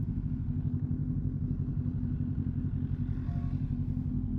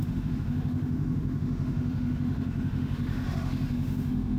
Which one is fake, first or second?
second